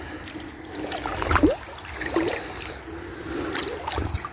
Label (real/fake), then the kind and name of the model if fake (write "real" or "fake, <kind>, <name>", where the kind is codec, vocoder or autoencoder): real